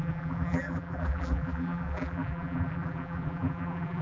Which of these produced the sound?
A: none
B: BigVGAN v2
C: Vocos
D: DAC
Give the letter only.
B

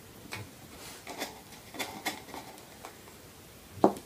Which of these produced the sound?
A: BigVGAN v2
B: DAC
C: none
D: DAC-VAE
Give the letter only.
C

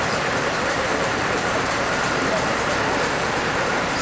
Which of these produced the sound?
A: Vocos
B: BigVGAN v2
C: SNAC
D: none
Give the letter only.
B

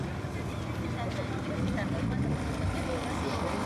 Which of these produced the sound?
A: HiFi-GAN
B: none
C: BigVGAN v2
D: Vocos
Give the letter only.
B